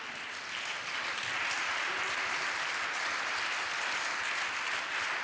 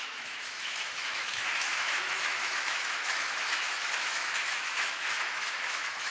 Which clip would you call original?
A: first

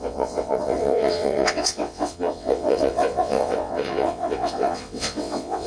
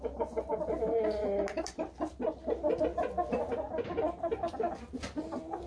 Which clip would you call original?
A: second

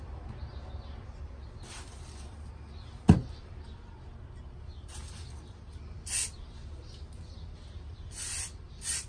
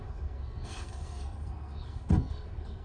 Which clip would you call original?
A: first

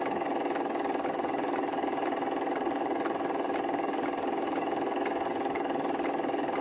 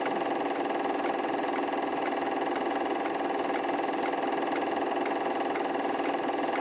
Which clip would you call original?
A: second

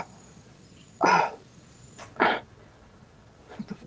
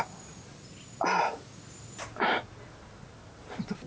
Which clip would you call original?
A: second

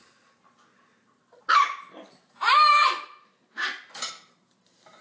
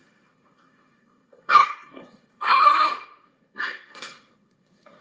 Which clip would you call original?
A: first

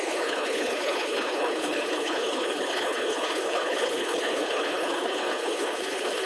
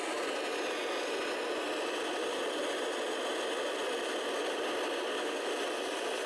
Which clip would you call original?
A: second